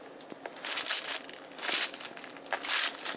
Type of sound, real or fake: real